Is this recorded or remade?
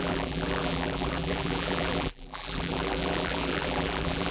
remade